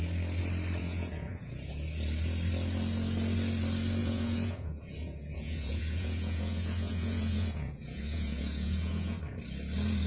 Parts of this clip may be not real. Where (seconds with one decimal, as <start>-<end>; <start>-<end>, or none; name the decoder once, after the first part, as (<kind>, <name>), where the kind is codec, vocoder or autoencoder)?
0.8-1.7 (vocoder, Vocos); 4.0-9.2